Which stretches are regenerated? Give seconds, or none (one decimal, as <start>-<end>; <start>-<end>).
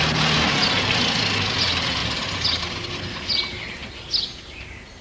none